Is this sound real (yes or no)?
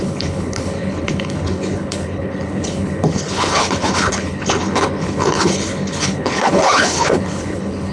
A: no